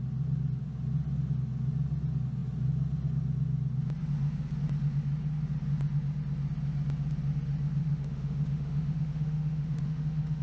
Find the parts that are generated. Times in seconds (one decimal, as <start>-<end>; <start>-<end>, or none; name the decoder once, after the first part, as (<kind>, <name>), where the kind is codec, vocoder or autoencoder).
7.8-10.4 (autoencoder, DAC-VAE)